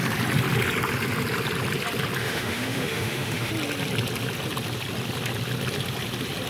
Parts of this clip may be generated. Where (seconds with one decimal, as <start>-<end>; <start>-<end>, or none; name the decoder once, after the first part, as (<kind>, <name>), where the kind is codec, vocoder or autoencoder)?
2.2-3.5 (autoencoder, DAC-VAE)